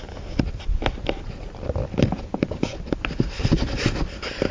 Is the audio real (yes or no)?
yes